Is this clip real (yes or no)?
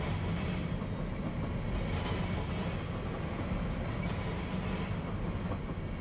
yes